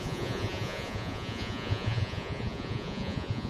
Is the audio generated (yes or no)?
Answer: yes